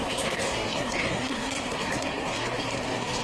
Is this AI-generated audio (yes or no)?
yes